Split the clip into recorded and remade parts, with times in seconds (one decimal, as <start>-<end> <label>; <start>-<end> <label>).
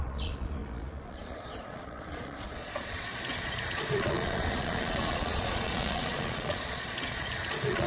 0.0-7.9 remade